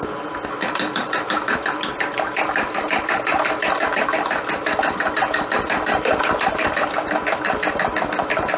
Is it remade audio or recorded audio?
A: remade